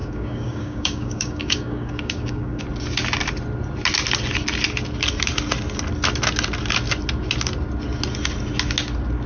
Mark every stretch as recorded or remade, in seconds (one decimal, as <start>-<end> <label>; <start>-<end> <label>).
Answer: 0.0-2.6 remade; 2.6-9.3 recorded